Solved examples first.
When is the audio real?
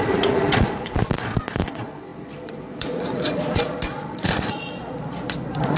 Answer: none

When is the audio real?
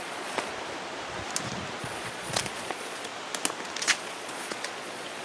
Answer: 0.5-1.8; 3.1-3.8